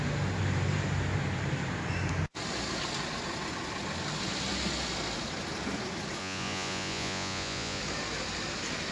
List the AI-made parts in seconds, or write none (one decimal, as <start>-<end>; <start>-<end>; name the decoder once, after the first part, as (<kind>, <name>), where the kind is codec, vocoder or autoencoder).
6.2-7.8 (vocoder, Vocos)